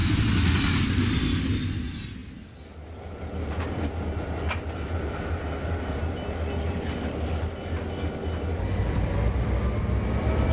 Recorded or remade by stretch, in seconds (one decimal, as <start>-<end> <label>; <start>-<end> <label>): 0.0-10.5 recorded